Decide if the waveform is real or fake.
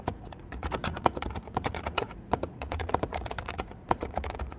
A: fake